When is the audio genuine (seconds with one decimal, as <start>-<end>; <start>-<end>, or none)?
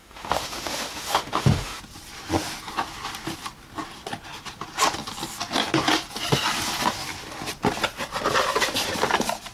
1.8-9.5